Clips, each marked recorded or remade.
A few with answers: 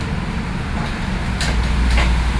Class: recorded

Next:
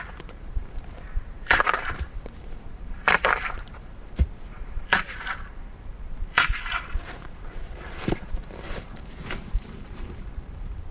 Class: remade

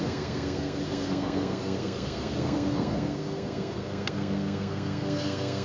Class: remade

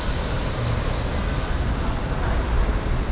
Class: recorded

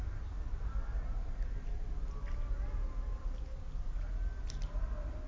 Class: recorded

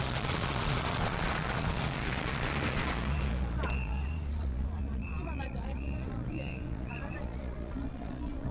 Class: remade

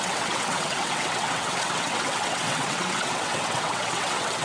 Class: remade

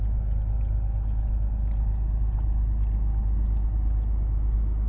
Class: recorded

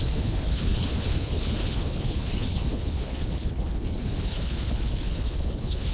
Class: remade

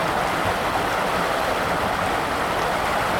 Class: recorded